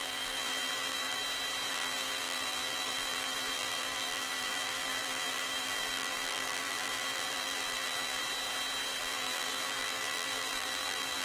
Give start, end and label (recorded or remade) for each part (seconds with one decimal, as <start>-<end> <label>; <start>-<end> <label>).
0.0-1.2 remade; 1.2-1.7 recorded; 1.7-8.2 remade; 8.2-9.0 recorded; 9.0-11.2 remade